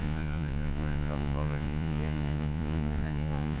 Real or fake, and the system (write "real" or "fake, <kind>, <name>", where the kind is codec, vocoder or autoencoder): fake, vocoder, Vocos